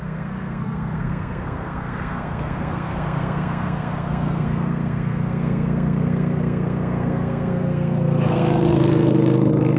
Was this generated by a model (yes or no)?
yes